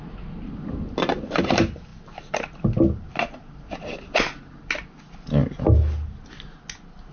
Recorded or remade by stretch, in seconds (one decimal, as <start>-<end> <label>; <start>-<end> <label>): 0.0-7.1 recorded